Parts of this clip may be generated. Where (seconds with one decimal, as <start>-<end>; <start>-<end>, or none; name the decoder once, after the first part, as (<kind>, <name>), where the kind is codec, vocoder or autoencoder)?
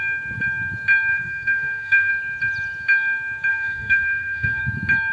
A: 1.1-2.1 (codec, SNAC); 3.5-4.6